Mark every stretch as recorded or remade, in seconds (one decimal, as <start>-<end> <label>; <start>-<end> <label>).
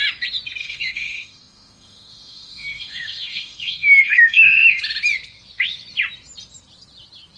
0.0-0.6 recorded; 0.6-4.8 remade; 4.8-7.4 recorded